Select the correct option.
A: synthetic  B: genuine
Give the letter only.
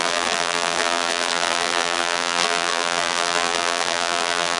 A